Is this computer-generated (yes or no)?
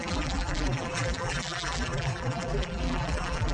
yes